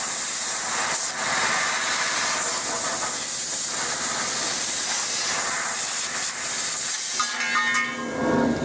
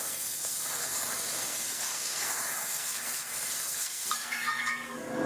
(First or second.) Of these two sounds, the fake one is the second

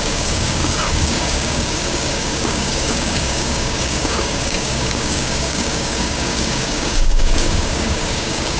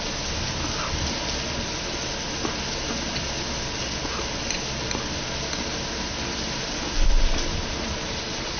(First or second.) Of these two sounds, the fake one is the first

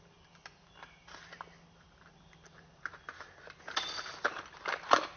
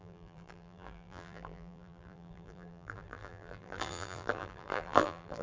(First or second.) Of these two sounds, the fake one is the second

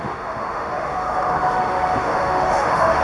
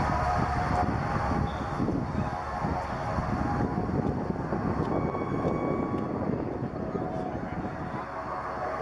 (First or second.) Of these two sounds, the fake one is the first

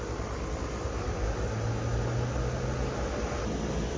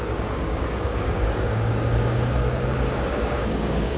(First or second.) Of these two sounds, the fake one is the second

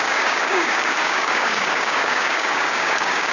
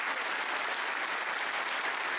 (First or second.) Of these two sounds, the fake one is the first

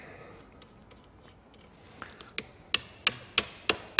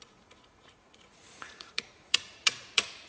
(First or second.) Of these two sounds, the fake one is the second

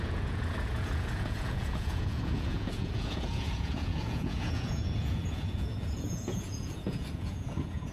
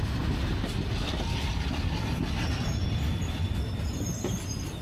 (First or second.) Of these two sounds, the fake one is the first